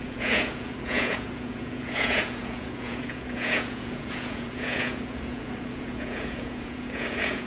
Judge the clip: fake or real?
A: fake